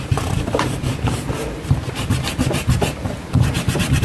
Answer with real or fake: fake